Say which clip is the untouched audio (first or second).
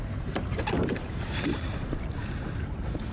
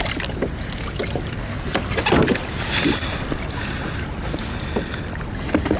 second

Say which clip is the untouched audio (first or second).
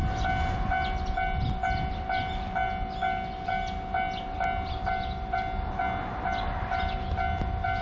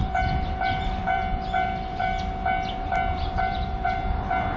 first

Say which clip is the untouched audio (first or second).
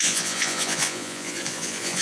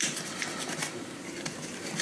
second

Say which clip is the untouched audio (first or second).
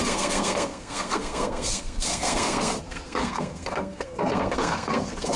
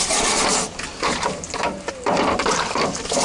second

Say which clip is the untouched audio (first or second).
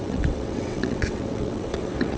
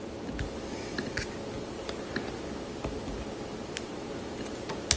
second